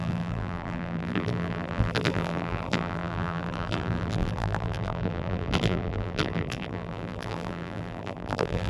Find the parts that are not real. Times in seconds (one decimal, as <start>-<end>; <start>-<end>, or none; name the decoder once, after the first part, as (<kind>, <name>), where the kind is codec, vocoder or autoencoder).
0.0-8.7 (vocoder, BigVGAN v2)